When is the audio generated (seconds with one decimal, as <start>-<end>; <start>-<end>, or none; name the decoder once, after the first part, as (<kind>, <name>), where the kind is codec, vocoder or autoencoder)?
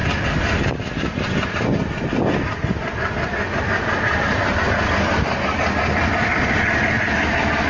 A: none